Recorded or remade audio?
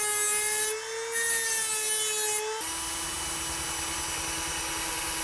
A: recorded